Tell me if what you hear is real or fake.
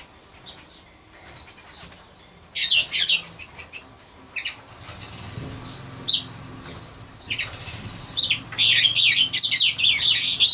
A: real